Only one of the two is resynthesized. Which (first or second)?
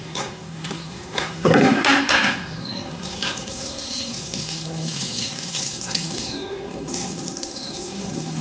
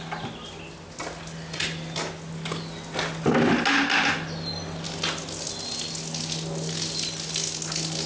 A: first